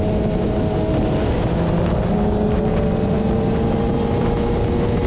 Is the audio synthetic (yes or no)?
no